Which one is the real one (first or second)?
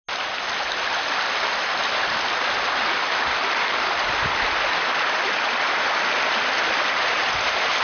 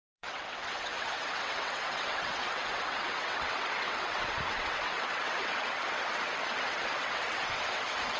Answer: first